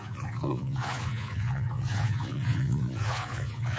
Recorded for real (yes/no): no